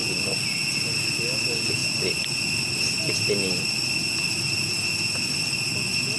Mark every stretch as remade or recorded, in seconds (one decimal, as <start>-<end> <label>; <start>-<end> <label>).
0.0-6.2 recorded